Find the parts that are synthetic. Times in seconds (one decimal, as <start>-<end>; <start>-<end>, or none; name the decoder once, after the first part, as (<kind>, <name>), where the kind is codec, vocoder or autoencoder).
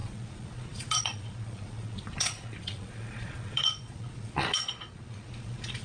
0.0-5.8 (vocoder, Vocos)